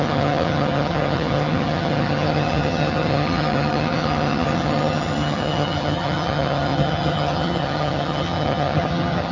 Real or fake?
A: fake